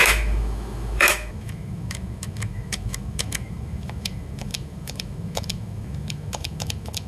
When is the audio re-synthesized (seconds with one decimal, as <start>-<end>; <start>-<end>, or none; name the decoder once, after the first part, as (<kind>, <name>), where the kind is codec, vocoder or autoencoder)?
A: 0.0-7.1 (autoencoder, DAC-VAE)